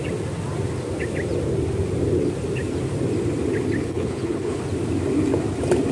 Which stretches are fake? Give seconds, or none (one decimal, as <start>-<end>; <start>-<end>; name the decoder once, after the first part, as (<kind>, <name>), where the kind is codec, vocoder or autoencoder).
3.8-4.6 (codec, HILCodec)